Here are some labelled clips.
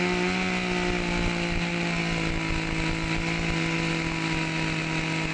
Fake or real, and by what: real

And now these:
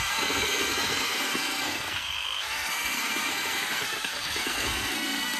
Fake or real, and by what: fake, codec, SNAC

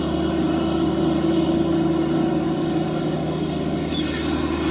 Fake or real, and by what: real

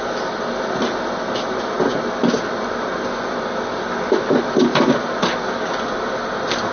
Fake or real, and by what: real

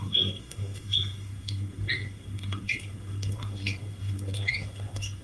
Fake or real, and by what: fake, codec, SNAC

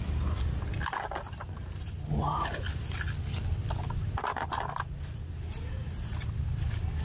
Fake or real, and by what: real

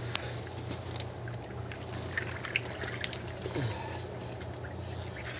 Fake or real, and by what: real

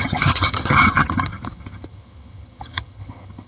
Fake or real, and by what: fake, vocoder, HiFi-GAN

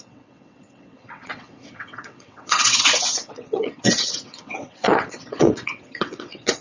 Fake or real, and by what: fake, vocoder, WaveNeXt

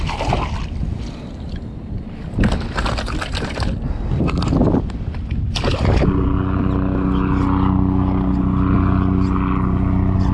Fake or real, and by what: real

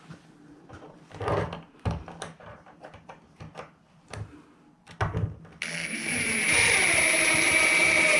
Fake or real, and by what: real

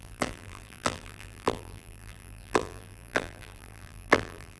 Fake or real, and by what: fake, vocoder, BigVGAN v2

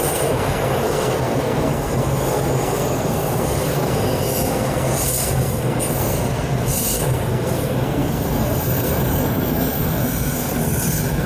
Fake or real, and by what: fake, codec, SNAC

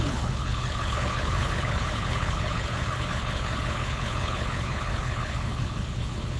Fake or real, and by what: fake, codec, HILCodec